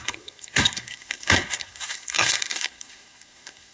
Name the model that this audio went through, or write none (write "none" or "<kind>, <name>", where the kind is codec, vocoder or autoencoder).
codec, SNAC